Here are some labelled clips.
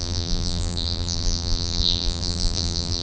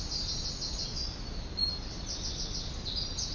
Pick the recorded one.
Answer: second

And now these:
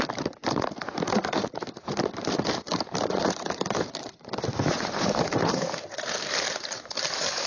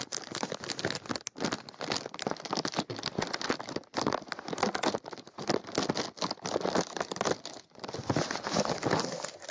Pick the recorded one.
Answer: second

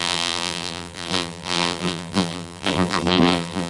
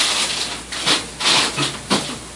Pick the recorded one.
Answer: second